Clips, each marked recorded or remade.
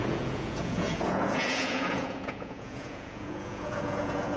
remade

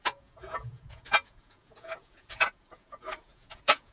remade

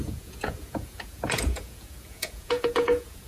remade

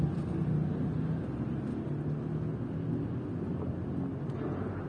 recorded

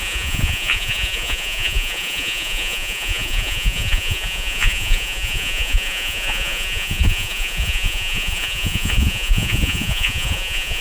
remade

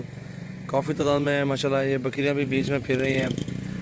remade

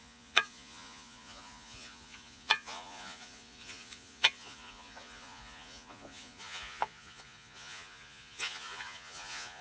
remade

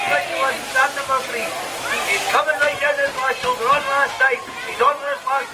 recorded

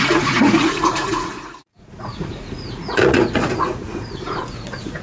remade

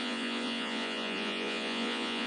remade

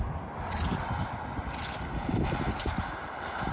recorded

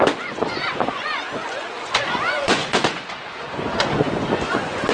remade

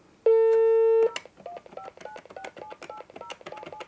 recorded